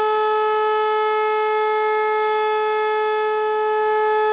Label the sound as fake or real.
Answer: real